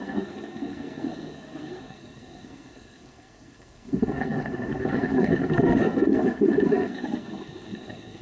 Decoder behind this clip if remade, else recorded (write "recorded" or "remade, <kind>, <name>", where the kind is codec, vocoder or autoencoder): remade, codec, SNAC